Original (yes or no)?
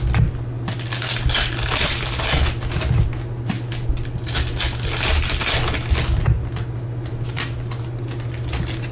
yes